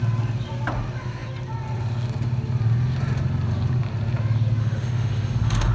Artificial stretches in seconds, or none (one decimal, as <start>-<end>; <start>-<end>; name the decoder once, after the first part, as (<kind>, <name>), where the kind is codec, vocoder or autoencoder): 4.6-5.7 (autoencoder, DAC-VAE)